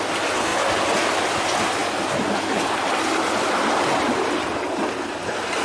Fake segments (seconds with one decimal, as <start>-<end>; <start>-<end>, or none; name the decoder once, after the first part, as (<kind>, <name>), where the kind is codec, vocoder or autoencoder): none